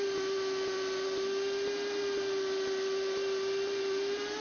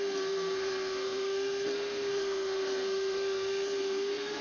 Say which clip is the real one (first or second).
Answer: first